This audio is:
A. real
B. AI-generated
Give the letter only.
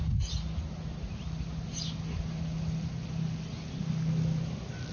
A